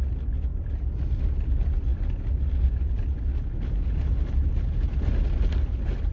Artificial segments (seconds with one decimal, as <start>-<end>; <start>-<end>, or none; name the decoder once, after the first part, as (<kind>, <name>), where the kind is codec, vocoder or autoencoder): none